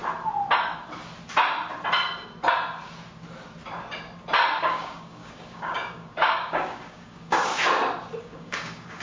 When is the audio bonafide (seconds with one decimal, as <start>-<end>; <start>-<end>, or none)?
0.0-4.6; 7.5-8.2